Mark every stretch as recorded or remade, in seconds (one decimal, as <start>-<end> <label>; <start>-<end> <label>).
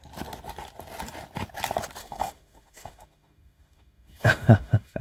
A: 0.0-2.0 recorded; 2.0-5.0 remade